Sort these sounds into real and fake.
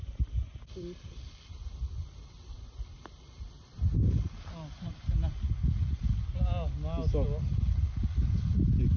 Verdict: real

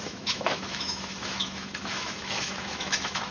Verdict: fake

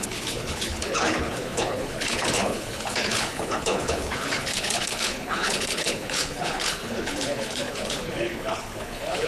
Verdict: fake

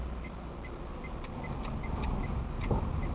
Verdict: real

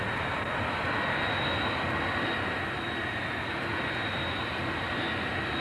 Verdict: real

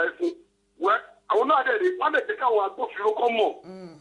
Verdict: real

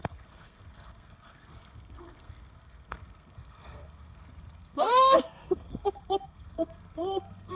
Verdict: fake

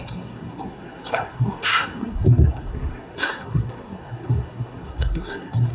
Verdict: fake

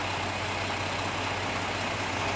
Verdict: real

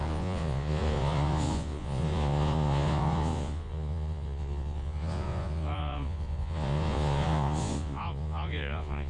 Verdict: fake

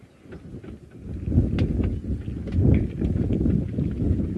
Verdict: real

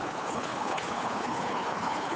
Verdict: fake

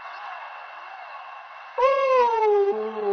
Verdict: fake